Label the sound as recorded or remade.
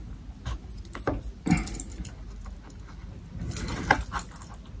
recorded